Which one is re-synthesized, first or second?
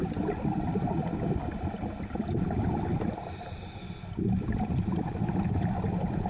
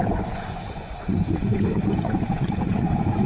second